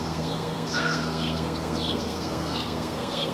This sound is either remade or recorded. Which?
remade